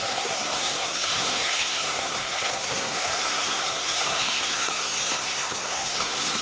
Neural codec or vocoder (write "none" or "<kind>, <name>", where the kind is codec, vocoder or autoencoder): codec, SNAC